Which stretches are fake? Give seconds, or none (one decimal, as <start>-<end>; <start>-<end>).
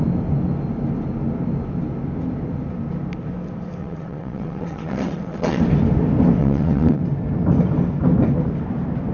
3.8-5.6; 6.4-7.0